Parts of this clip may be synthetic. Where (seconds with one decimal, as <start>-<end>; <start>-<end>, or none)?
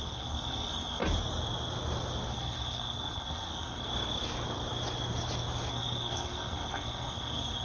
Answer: 0.0-1.0; 2.3-3.9; 5.7-7.6